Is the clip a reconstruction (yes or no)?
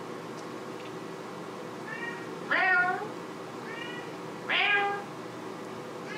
no